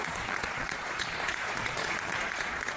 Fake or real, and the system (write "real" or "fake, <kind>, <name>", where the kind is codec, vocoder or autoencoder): fake, vocoder, Vocos